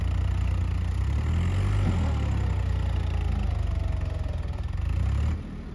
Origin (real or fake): real